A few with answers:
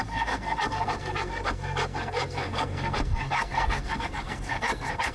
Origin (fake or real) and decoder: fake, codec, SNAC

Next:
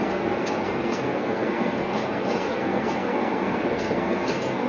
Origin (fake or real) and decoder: fake, codec, SNAC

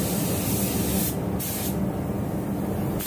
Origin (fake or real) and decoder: real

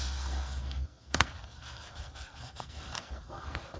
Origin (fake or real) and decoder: fake, codec, SNAC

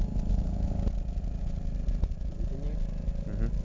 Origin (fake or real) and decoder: real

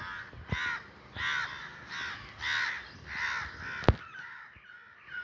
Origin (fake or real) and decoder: real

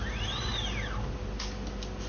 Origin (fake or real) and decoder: real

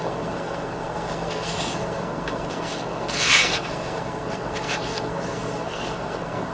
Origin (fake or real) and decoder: fake, codec, SNAC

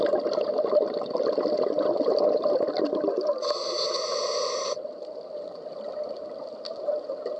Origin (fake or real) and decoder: real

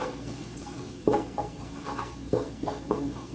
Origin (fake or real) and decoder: fake, codec, SNAC